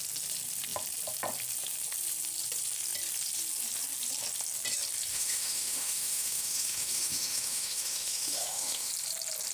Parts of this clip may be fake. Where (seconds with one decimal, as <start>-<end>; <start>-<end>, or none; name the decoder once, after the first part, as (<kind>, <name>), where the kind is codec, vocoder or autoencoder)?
5.1-8.9 (autoencoder, DAC-VAE)